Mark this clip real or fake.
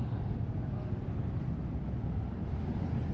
real